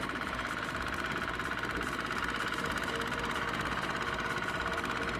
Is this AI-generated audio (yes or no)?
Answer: no